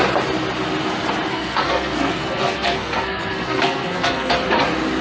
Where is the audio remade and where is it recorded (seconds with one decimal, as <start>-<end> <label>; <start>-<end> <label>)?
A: 0.0-1.3 recorded; 1.3-4.3 remade; 4.3-5.0 recorded